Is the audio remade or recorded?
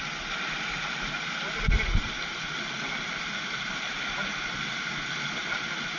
recorded